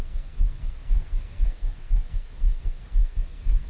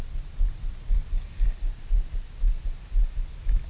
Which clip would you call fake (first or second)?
first